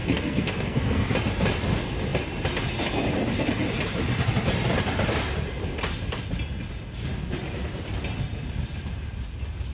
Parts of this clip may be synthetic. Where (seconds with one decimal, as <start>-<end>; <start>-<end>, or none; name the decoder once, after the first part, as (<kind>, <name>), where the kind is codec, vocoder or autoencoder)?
0.0-1.1 (codec, SNAC)